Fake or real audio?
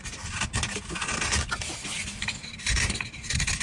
real